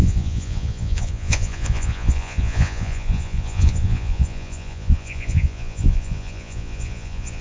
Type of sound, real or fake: fake